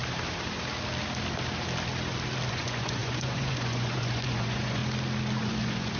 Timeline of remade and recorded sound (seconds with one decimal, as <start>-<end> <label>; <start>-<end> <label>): 0.0-2.5 recorded; 2.5-4.8 remade; 4.8-5.4 recorded; 5.4-6.0 remade